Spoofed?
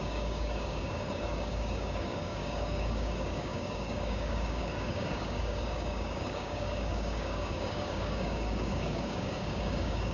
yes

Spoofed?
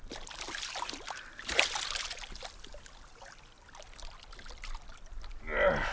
no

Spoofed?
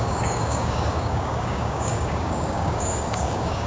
yes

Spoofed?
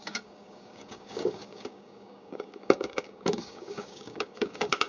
yes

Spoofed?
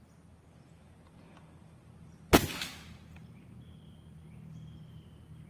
no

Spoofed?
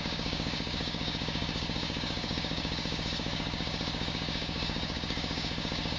yes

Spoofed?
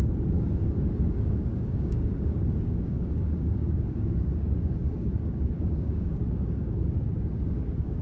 yes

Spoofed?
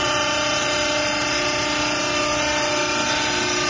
no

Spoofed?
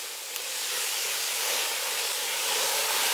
yes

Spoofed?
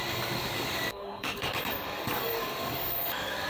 yes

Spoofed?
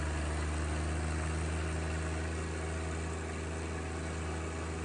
no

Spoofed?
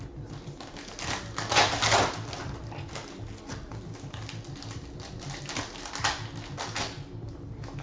no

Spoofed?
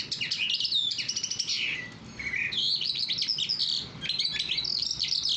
no